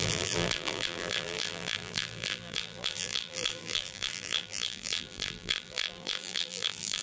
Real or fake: fake